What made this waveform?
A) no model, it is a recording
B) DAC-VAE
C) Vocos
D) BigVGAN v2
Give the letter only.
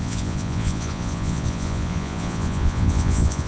C